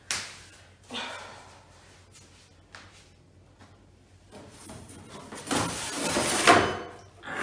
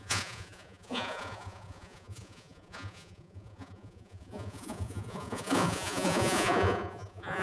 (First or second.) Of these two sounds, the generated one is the second